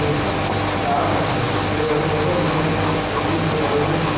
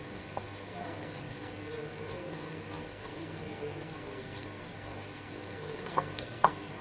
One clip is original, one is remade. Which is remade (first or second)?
second